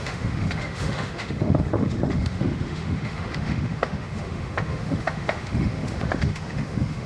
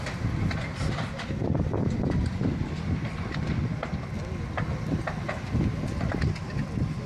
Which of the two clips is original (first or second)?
second